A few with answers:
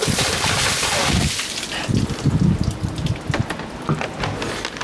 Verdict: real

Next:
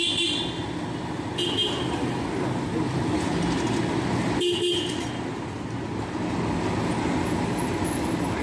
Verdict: real